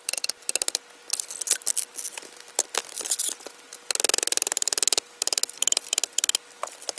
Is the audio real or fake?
real